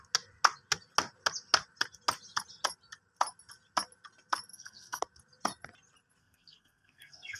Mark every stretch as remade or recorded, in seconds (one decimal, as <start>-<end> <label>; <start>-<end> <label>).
0.0-4.5 recorded; 4.5-5.0 remade; 5.0-6.2 recorded; 6.2-7.4 remade